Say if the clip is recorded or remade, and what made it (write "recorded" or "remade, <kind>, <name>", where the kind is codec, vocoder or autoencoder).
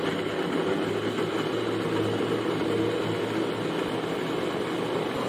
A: recorded